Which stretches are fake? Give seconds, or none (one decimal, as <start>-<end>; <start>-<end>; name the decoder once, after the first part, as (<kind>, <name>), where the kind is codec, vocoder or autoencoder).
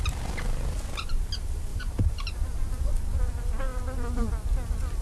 1.7-2.9 (vocoder, BigVGAN v2)